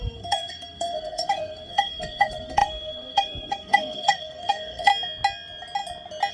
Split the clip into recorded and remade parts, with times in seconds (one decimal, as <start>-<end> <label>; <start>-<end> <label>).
0.0-4.9 remade; 4.9-6.3 recorded